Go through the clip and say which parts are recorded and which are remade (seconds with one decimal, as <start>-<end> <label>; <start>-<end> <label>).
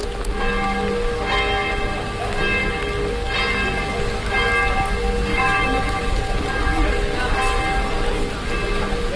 0.0-5.3 recorded; 5.3-6.0 remade; 6.0-9.2 recorded